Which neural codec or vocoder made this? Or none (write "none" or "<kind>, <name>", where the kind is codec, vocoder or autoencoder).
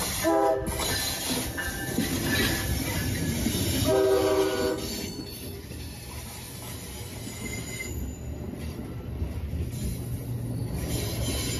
none